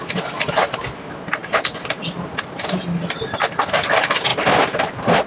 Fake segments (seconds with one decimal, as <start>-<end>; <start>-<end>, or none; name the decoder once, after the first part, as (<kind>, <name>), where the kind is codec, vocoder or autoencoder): none